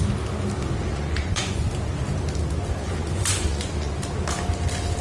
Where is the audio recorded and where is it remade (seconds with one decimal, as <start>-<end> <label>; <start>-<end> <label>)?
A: 0.0-0.9 recorded; 0.9-1.7 remade; 1.7-2.8 recorded; 2.8-3.9 remade; 3.9-5.0 recorded